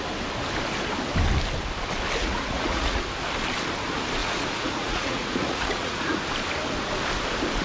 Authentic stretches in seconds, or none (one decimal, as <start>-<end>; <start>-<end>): 0.0-2.2; 3.0-4.2; 6.2-7.6